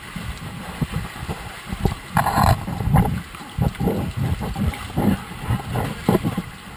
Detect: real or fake real